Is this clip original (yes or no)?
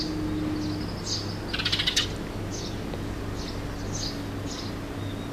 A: yes